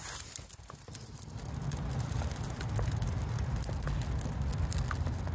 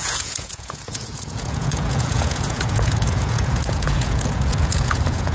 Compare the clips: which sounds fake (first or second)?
second